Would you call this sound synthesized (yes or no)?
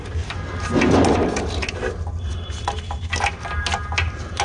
no